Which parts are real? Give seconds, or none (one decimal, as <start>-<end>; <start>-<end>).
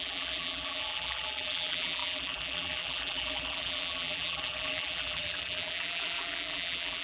none